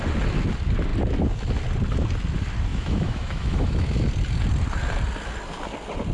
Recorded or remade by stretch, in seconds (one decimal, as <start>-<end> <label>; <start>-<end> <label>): 0.0-2.7 recorded; 2.7-4.1 remade; 4.1-6.1 recorded